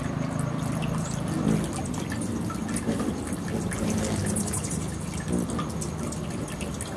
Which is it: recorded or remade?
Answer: recorded